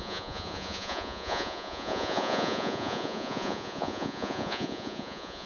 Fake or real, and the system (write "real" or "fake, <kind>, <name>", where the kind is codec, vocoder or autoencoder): fake, vocoder, Vocos